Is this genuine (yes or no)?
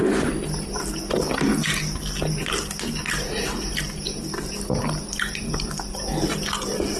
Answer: yes